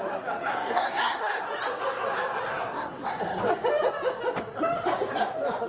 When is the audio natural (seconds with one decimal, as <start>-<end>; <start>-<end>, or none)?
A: 0.0-0.5; 1.4-2.5; 3.4-5.7